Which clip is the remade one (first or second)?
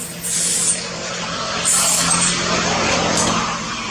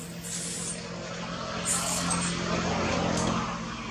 first